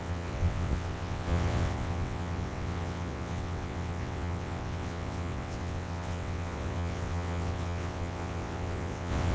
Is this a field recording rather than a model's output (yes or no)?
no